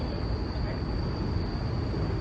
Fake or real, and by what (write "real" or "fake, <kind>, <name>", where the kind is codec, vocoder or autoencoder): real